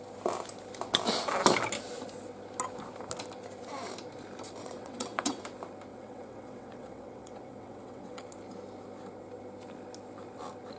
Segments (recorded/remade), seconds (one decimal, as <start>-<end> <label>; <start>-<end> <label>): 0.0-4.6 recorded; 4.6-5.4 remade; 5.4-5.9 recorded; 5.9-8.2 remade; 8.2-10.8 recorded